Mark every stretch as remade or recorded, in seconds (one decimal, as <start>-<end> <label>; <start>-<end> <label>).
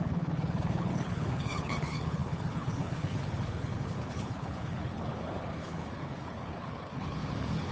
0.0-7.7 remade